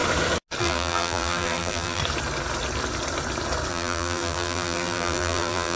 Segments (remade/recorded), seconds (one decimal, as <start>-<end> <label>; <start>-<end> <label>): 0.0-0.6 recorded; 0.6-2.0 remade; 2.0-3.7 recorded; 3.7-5.8 remade